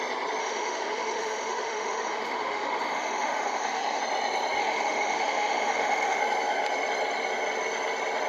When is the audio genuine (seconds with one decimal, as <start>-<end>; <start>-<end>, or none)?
0.0-0.4; 4.0-4.6; 6.2-8.3